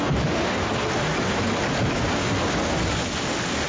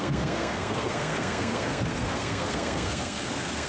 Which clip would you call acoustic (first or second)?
first